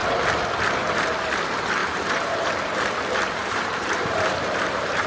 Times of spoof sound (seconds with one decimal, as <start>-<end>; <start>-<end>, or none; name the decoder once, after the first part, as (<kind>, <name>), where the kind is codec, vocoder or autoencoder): 1.8-2.5 (vocoder, BigVGAN v2); 3.4-5.1